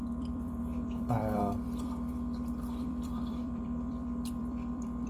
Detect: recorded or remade remade